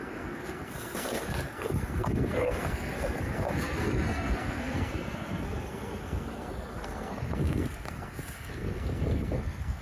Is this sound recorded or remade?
remade